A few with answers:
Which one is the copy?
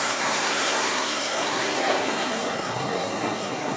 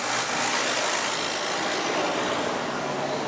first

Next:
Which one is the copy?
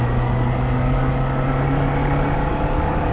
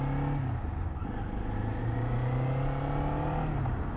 first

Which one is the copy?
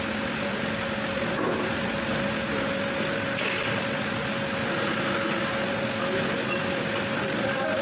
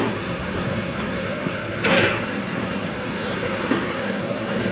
second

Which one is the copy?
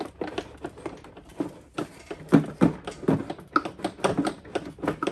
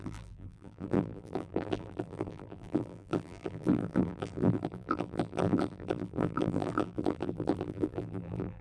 second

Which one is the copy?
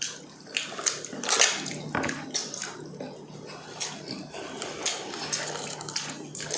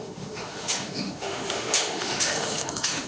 second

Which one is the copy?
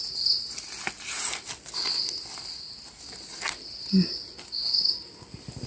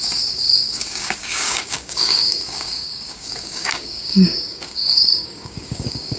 second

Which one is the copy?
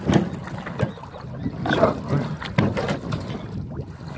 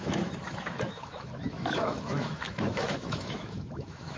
second